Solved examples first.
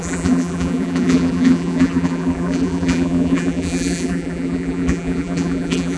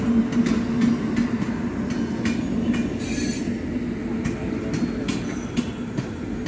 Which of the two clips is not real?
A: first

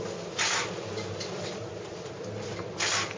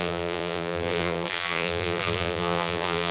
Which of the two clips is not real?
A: second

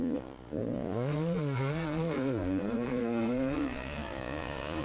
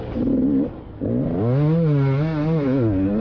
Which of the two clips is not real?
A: first